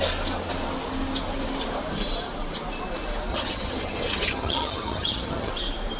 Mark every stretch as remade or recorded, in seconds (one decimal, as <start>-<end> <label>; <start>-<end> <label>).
0.0-3.3 recorded; 3.3-5.5 remade; 5.5-6.0 recorded